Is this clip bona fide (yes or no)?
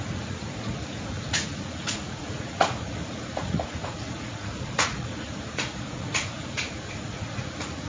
no